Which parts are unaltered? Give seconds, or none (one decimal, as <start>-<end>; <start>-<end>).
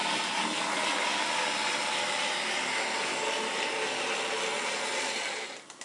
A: 0.0-5.8